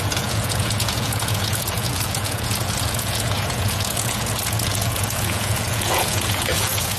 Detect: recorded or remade remade